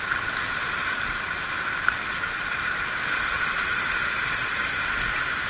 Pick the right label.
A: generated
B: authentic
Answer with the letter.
B